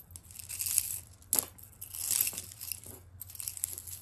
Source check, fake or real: real